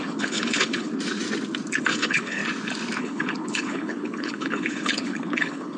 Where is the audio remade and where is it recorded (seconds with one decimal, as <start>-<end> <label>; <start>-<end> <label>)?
0.0-0.9 remade; 0.9-1.8 recorded; 1.8-2.4 remade; 2.4-3.0 recorded; 3.0-5.8 remade